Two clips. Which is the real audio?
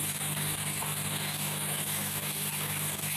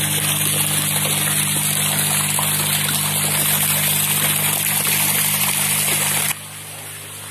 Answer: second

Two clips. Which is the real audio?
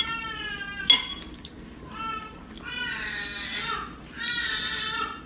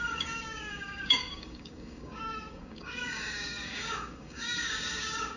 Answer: first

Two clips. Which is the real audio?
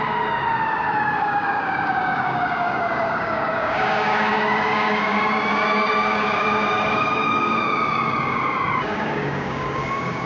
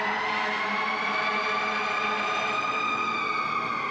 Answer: second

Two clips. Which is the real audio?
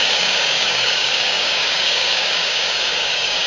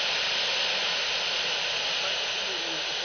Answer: second